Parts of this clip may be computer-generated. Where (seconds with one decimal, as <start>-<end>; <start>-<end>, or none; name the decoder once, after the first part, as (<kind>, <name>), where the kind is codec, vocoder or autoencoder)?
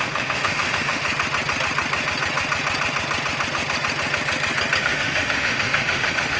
0.0-1.0 (autoencoder, DAC-VAE); 4.8-6.4